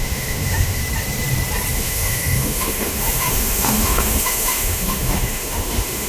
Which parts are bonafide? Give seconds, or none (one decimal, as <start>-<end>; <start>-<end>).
0.8-1.7